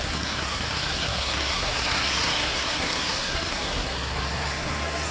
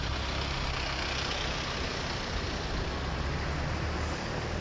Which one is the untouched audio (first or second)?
second